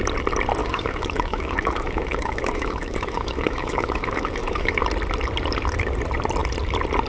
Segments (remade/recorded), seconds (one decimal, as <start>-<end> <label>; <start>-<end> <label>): 0.0-0.6 recorded; 0.6-4.8 remade; 4.8-7.1 recorded